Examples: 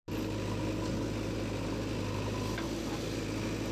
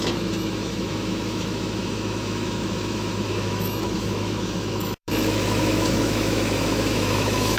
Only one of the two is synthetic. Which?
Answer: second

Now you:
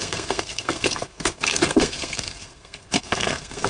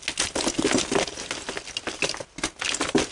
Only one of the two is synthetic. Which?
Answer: first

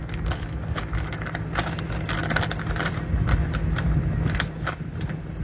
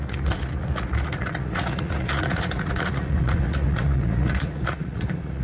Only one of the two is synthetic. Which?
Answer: second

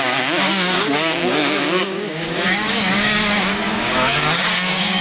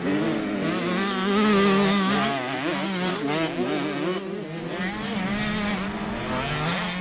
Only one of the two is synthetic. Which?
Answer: first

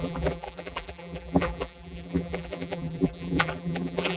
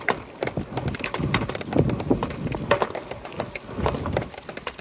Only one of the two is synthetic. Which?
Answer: first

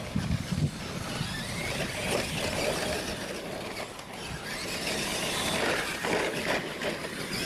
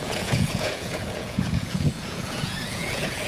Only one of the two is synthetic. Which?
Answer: second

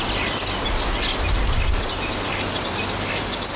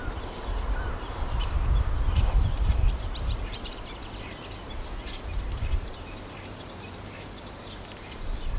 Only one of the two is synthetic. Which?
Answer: second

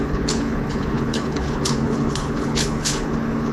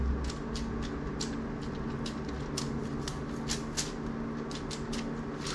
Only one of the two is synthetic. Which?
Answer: first